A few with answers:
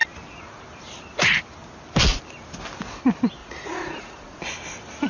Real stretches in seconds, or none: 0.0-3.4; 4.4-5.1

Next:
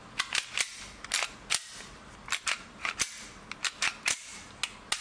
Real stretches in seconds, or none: 0.0-5.0

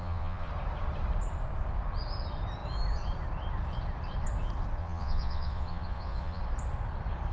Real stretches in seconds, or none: 0.5-4.8; 6.4-7.3

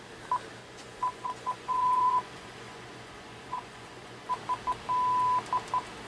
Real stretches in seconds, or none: 0.0-0.6; 4.3-6.1

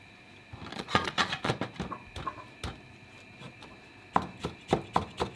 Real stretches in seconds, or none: 0.0-0.7; 1.5-5.4